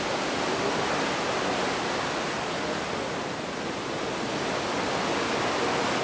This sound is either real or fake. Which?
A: real